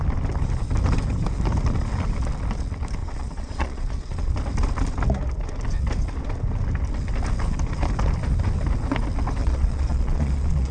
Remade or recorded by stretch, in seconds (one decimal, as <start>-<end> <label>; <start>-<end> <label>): 0.0-3.0 recorded; 3.0-4.3 remade; 4.3-9.4 recorded; 9.4-10.7 remade